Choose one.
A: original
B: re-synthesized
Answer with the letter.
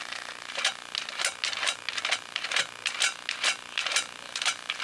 A